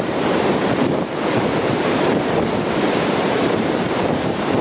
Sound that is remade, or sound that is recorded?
remade